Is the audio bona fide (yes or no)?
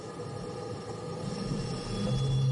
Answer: yes